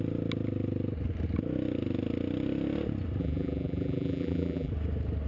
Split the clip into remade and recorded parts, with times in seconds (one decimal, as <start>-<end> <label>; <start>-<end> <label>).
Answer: 0.0-3.2 recorded; 3.2-4.7 remade; 4.7-5.3 recorded